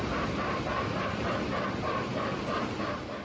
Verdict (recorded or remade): recorded